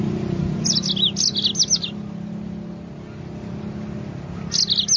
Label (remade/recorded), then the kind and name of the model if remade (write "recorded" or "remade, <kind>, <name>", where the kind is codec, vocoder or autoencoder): recorded